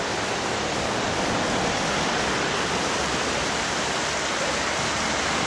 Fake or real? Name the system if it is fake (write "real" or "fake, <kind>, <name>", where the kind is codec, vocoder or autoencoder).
real